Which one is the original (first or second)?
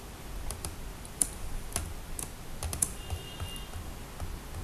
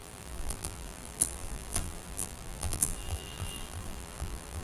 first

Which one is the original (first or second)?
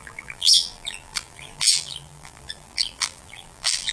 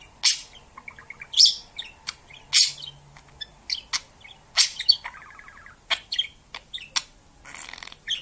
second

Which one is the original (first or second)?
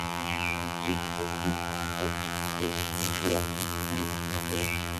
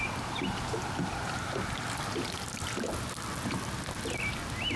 second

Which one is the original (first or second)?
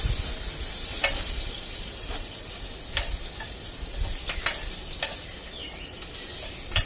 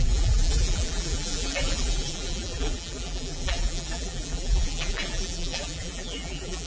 first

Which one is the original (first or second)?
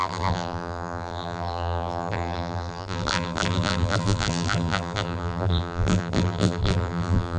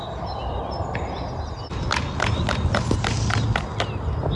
second